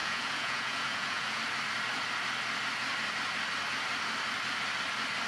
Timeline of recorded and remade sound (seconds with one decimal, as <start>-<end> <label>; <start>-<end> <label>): 0.0-1.4 remade; 1.4-5.3 recorded